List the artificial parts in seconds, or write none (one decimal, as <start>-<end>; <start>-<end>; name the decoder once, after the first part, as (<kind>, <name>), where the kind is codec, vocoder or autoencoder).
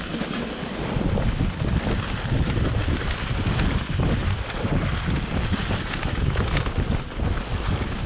4.2-4.9 (vocoder, BigVGAN v2)